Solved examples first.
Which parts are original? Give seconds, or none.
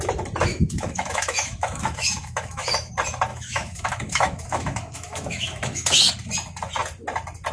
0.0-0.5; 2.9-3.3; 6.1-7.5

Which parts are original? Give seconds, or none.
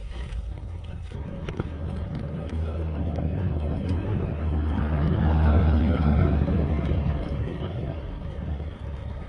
none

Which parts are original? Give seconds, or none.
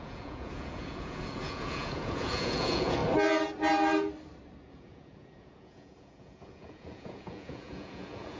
3.0-4.7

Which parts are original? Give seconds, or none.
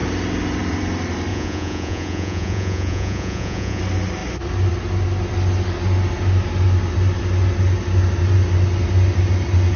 0.0-1.3; 3.8-9.8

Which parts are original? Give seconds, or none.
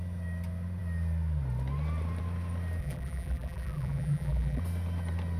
0.0-2.8; 4.6-5.4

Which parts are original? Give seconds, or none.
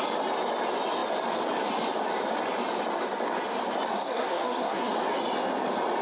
0.0-3.9; 4.9-6.0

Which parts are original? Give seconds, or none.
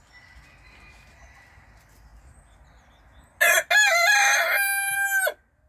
0.0-5.7